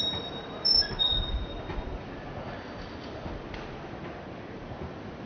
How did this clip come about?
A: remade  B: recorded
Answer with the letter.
B